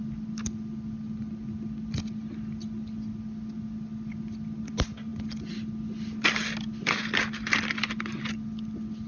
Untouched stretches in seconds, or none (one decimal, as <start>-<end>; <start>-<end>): 0.0-9.1